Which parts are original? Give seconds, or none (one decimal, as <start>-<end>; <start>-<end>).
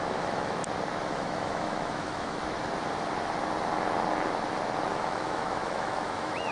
0.6-1.1; 2.4-4.9